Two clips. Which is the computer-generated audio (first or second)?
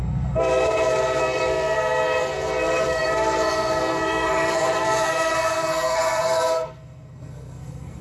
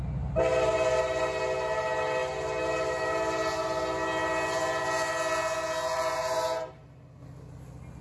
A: first